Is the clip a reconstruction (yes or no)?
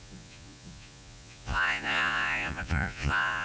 yes